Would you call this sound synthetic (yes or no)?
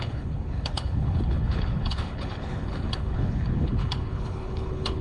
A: yes